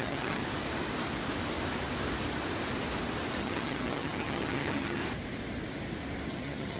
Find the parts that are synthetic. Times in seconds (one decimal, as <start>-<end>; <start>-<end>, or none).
0.0-0.4; 3.4-5.0; 6.3-6.8